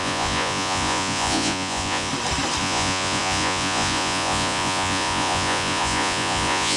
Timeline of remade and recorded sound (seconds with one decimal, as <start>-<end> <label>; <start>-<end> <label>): 0.0-2.1 remade; 2.1-2.6 recorded; 2.6-6.8 remade